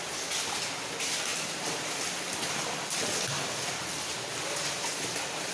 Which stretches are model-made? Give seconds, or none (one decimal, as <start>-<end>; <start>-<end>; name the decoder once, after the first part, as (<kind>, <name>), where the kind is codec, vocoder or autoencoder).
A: none